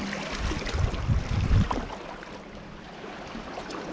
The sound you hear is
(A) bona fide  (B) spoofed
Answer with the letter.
A